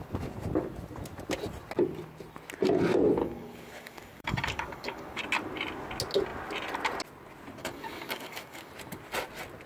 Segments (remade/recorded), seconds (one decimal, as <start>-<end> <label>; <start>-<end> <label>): 0.0-3.2 recorded; 3.2-5.2 remade; 5.2-7.6 recorded; 7.6-8.7 remade; 8.7-9.7 recorded